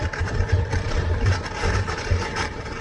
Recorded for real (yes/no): no